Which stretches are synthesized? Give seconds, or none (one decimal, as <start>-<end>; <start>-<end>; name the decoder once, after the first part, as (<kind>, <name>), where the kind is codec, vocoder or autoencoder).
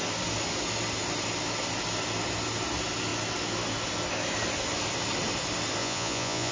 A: 5.8-6.5 (vocoder, Vocos)